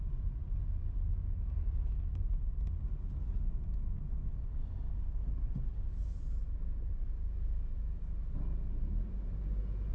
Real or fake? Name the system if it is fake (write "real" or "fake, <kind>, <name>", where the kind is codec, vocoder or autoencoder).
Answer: real